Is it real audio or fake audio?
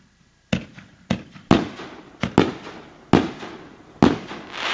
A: real